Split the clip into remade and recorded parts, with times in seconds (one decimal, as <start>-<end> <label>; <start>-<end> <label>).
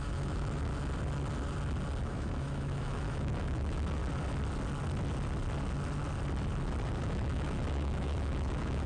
0.0-0.7 remade; 0.7-2.0 recorded; 2.0-4.0 remade; 4.0-7.0 recorded; 7.0-8.9 remade